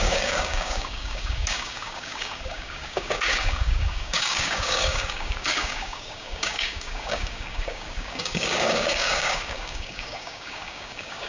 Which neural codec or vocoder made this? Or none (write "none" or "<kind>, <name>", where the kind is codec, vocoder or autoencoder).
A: codec, DAC